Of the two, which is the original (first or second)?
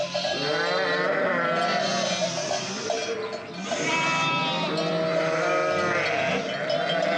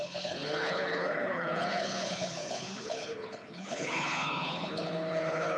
first